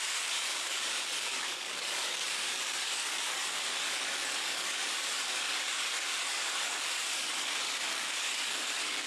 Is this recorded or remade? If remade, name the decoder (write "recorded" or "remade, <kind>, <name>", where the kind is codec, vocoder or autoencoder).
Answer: remade, codec, DAC